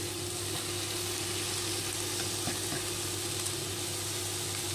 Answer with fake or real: real